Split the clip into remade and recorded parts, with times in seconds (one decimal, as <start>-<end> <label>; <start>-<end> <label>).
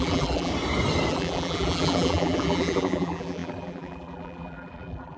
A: 0.0-0.5 remade; 0.5-1.1 recorded; 1.1-5.2 remade